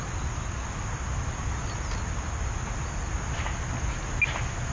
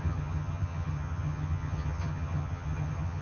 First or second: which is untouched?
first